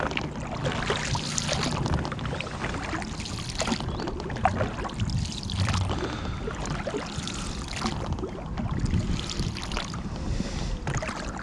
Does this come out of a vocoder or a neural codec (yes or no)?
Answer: no